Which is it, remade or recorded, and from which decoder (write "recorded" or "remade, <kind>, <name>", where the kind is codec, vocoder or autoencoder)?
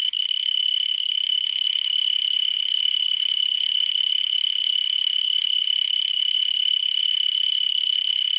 remade, vocoder, Vocos